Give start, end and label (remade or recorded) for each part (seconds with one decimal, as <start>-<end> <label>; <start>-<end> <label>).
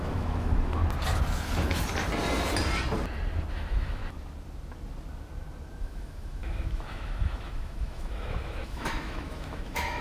0.0-0.8 remade; 0.8-3.5 recorded; 3.5-4.0 remade; 4.0-5.8 recorded; 5.8-10.0 remade